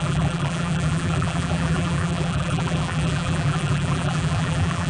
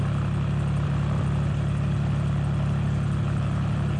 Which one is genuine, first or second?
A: second